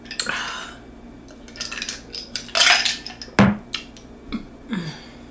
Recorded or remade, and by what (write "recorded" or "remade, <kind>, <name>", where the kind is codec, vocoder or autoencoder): recorded